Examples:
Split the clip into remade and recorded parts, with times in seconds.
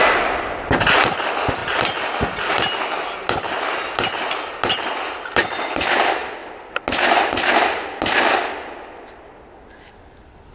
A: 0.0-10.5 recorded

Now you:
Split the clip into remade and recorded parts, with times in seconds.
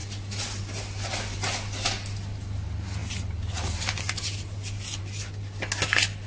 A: 0.0-6.3 recorded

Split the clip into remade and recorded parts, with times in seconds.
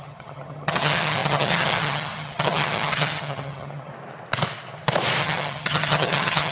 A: 0.0-3.9 remade; 3.9-5.2 recorded; 5.2-6.5 remade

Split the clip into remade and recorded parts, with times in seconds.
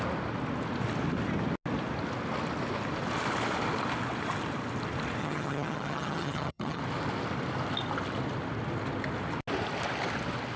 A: 0.0-5.2 recorded; 5.2-6.8 remade; 6.8-10.6 recorded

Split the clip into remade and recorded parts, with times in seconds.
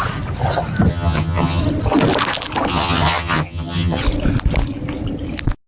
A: 0.0-0.9 recorded; 0.9-1.6 remade; 1.6-2.7 recorded; 2.7-4.0 remade; 4.0-5.7 recorded